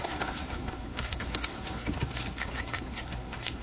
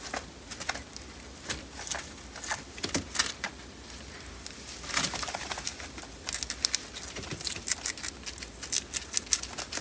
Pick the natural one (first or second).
second